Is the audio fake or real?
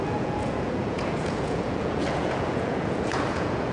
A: fake